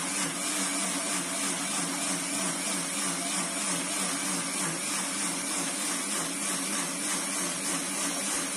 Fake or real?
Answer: real